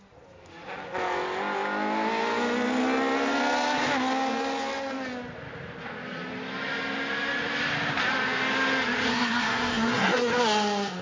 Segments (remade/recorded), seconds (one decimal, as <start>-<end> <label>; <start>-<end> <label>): 0.0-9.1 recorded; 9.1-10.3 remade; 10.3-11.0 recorded